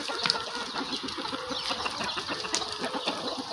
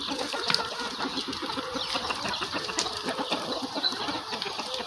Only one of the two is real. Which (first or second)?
first